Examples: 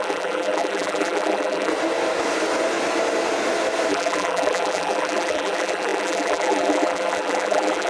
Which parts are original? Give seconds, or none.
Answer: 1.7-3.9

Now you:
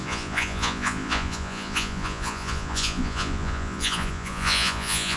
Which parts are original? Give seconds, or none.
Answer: none

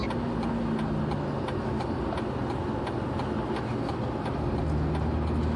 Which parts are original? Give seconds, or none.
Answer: 0.0-5.6

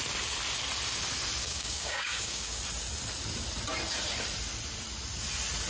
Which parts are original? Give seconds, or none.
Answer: 0.0-1.4; 2.6-5.7

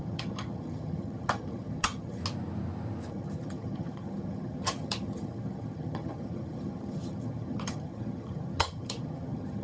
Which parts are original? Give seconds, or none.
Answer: 2.2-3.1

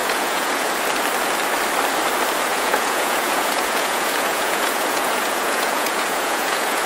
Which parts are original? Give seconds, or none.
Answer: 0.7-2.5

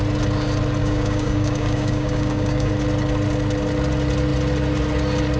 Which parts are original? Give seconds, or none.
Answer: 0.0-0.8; 2.7-5.4

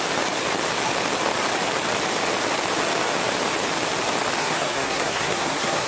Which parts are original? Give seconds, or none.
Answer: 0.0-4.4